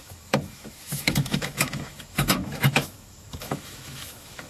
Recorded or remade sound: remade